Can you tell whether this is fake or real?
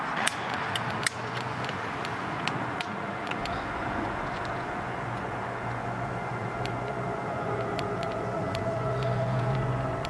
fake